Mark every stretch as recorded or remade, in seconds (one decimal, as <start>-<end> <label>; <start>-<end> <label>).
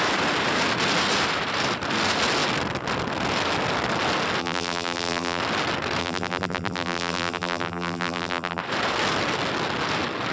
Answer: 0.0-4.4 recorded; 4.4-5.4 remade; 5.4-6.0 recorded; 6.0-8.6 remade; 8.6-10.3 recorded